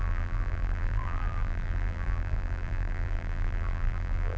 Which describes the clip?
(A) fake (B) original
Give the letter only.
A